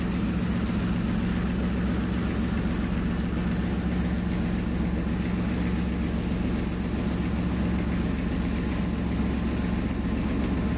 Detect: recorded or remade recorded